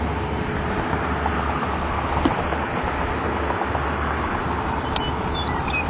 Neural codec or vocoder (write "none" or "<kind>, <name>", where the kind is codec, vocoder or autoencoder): none